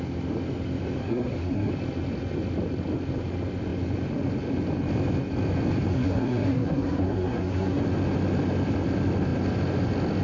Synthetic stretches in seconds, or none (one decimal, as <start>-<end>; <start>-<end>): 1.0-1.7; 5.9-7.8